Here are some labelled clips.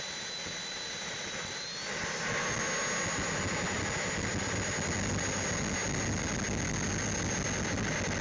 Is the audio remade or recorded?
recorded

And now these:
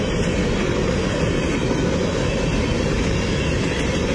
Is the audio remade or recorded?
recorded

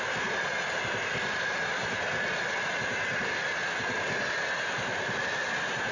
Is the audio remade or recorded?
recorded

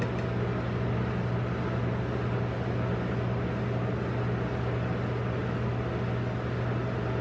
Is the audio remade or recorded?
recorded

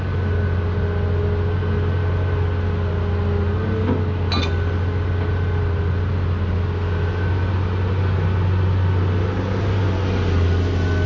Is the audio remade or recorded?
recorded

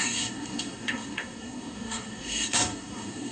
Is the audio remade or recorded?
remade